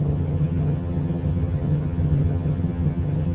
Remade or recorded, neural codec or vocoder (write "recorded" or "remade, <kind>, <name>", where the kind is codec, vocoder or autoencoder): remade, vocoder, HiFi-GAN